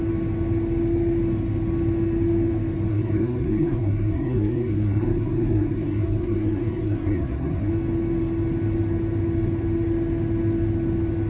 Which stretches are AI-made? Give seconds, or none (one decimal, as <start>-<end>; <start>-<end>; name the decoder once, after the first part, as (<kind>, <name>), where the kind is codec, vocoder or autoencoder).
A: 2.9-7.7 (codec, SNAC)

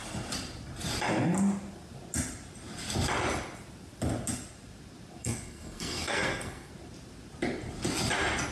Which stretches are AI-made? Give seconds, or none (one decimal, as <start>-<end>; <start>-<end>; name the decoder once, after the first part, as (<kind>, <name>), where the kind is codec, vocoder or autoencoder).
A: 5.2-6.7 (codec, SNAC)

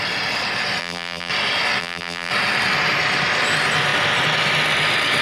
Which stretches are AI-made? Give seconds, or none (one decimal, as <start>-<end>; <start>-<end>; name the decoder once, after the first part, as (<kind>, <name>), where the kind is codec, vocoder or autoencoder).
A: 0.8-1.3 (vocoder, BigVGAN v2); 1.8-2.3

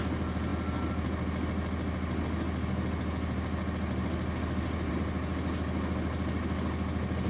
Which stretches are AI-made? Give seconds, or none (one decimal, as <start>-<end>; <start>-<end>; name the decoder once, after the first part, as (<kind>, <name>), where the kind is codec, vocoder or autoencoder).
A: none

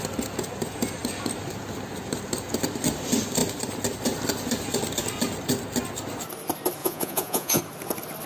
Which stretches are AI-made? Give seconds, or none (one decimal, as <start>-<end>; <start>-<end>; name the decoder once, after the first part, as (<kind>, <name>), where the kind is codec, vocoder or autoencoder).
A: 6.8-7.6 (vocoder, Vocos)

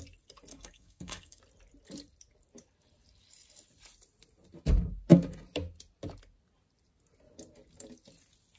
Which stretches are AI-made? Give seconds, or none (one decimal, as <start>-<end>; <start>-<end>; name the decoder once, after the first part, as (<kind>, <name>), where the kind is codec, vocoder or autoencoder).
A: 0.5-1.4 (codec, SNAC)

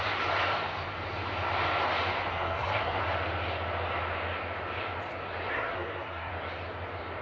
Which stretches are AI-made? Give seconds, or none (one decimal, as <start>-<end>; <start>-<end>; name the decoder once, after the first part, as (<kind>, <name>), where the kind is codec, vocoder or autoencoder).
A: 2.3-3.0 (codec, SNAC); 5.5-6.3

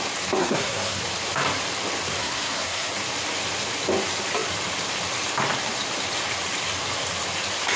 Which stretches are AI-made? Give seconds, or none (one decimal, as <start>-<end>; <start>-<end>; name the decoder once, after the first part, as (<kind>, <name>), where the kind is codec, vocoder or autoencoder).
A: 0.4-1.0 (codec, SNAC); 2.2-2.9